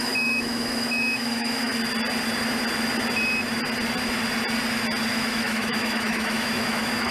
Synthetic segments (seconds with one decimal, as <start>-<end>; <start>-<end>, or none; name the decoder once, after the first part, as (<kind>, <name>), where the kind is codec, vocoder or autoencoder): 0.0-1.7 (autoencoder, DAC-VAE); 5.1-7.1